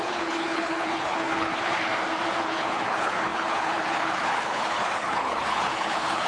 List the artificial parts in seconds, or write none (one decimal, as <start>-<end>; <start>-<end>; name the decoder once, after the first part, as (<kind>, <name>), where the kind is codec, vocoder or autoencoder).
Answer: 0.0-1.9 (codec, HILCodec); 2.4-6.3

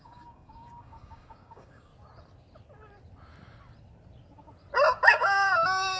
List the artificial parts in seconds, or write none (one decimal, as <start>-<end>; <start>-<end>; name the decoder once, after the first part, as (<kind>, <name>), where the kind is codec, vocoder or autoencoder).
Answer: 0.0-1.9 (codec, DAC); 5.1-6.0